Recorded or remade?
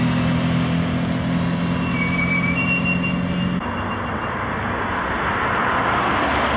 recorded